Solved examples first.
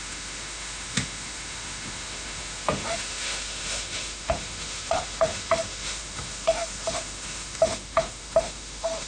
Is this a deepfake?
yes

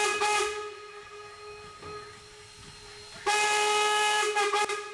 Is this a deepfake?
no